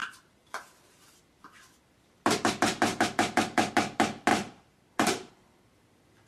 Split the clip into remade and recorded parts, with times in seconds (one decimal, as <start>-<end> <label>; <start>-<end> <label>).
0.0-1.2 remade; 1.2-2.9 recorded; 2.9-3.7 remade; 3.7-4.3 recorded; 4.3-5.3 remade; 5.3-6.3 recorded